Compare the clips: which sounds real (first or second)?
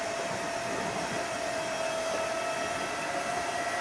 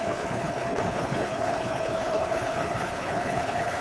first